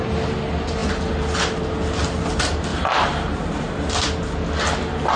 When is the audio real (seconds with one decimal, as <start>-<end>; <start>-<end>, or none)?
0.0-2.7; 3.7-5.2